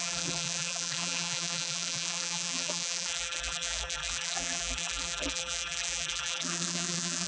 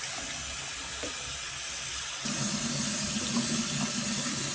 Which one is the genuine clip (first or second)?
second